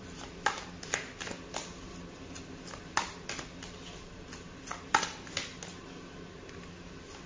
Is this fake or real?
real